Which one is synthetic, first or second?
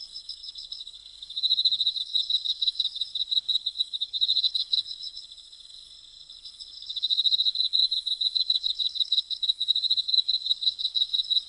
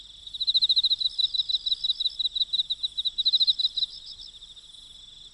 first